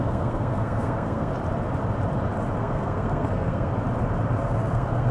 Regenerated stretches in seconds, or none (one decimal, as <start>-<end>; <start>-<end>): 0.0-1.3; 2.6-3.7; 4.4-5.1